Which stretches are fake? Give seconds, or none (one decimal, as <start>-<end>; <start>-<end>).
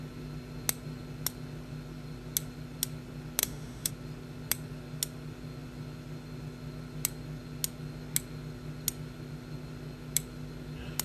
3.4-3.9